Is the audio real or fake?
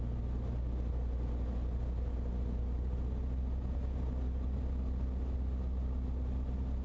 real